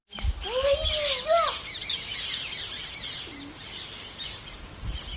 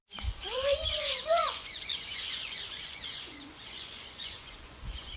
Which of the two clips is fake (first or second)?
second